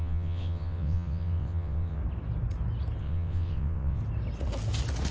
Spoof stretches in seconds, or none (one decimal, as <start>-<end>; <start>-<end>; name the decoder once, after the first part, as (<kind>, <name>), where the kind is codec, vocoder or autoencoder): 0.0-2.0 (vocoder, WaveNeXt); 3.0-4.0